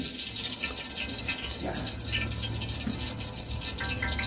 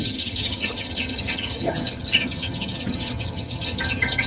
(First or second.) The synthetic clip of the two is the second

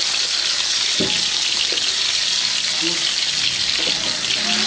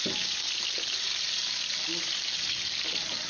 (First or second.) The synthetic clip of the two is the second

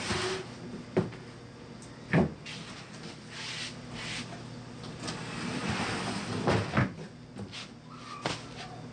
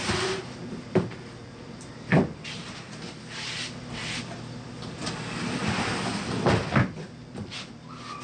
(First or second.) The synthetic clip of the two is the second